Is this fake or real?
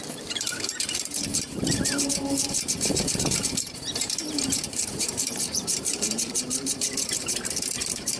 fake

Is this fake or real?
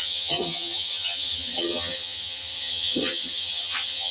fake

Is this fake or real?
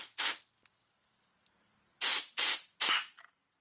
real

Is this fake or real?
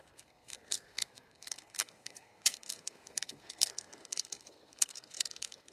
fake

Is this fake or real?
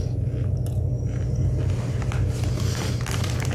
real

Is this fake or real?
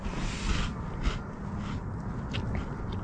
real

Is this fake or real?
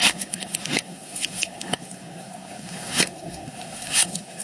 fake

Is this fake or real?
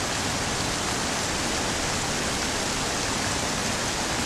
real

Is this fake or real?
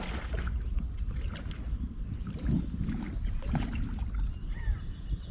real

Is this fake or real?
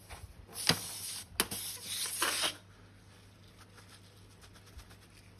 real